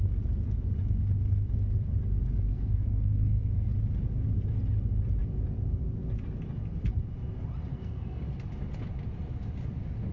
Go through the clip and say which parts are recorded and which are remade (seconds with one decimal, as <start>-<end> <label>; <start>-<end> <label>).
0.0-2.5 recorded; 2.5-3.7 remade; 3.7-7.7 recorded; 7.7-8.2 remade; 8.2-10.1 recorded